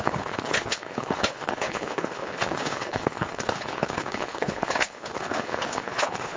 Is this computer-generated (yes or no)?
yes